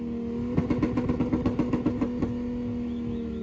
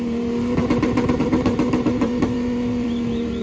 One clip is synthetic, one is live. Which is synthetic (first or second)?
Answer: second